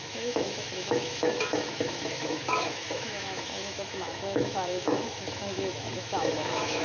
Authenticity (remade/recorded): remade